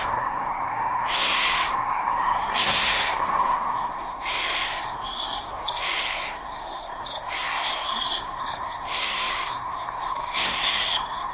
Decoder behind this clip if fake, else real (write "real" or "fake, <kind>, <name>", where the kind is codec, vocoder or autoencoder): fake, codec, SNAC